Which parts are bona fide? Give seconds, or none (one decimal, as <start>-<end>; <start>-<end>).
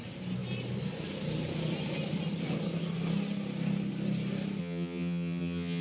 0.0-4.6